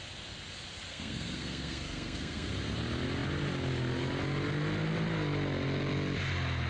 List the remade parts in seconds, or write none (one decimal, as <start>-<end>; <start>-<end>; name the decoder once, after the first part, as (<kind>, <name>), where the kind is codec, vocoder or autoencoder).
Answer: 0.9-2.5 (codec, SNAC)